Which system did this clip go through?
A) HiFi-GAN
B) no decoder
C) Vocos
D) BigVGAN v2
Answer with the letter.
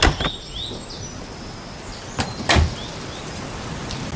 B